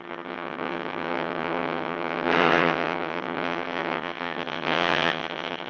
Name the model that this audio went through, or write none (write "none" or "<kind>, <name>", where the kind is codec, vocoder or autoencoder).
vocoder, HiFi-GAN